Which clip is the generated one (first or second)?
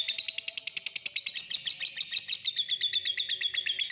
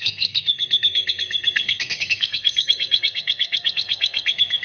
second